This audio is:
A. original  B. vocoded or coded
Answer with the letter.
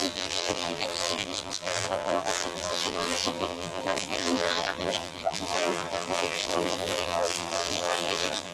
B